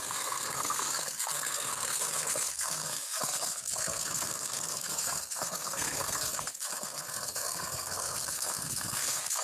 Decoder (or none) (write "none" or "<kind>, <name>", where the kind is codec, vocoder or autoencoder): codec, SNAC